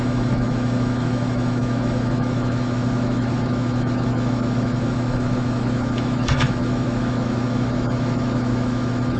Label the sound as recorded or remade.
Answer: remade